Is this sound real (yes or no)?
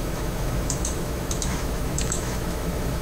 no